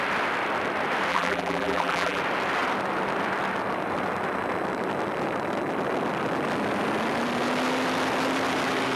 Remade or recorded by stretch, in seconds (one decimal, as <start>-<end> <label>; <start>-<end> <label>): 0.0-1.1 recorded; 1.1-2.2 remade; 2.2-9.0 recorded